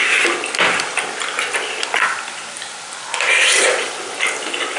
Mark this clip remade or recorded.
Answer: recorded